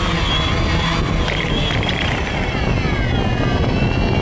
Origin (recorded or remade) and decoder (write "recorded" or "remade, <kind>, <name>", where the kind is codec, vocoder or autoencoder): recorded